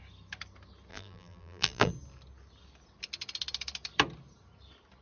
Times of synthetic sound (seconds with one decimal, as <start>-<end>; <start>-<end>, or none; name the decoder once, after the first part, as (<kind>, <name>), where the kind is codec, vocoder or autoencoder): 0.9-1.9 (vocoder, BigVGAN v2)